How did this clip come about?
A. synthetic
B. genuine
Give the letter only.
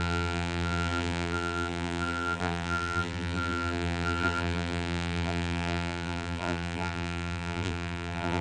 A